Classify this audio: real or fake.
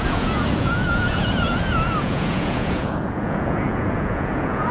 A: fake